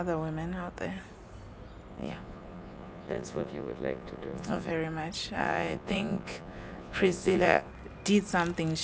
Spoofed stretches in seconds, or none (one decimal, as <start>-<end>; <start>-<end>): 1.9-4.7; 5.4-7.7